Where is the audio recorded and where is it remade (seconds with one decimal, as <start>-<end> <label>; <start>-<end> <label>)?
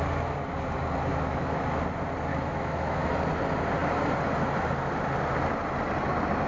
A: 0.0-1.1 recorded; 1.1-1.6 remade; 1.6-2.3 recorded; 2.3-3.1 remade; 3.1-6.5 recorded